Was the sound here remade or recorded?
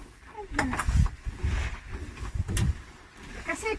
recorded